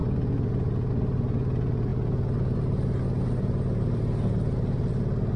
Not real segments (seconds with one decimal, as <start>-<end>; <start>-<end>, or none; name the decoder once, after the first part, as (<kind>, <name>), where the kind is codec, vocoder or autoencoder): none